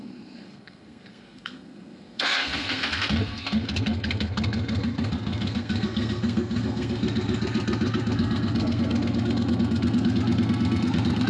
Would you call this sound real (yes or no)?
no